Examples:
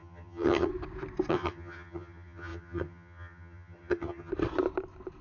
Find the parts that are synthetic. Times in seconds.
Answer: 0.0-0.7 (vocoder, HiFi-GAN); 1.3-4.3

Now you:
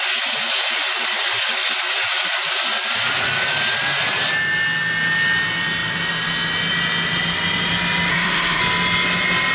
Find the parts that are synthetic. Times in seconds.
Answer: 8.1-8.6 (codec, SNAC)

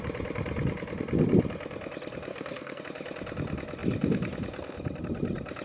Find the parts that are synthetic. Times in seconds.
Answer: 2.3-2.8 (codec, SNAC)